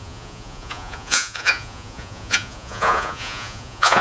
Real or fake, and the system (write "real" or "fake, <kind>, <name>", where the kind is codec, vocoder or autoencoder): fake, vocoder, Vocos